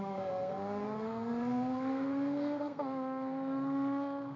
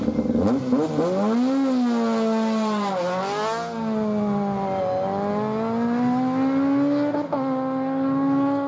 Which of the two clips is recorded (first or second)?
second